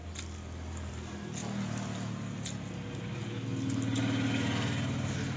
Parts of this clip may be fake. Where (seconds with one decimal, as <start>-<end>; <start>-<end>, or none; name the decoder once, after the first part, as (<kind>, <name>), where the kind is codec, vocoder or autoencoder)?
0.0-0.9 (vocoder, BigVGAN v2)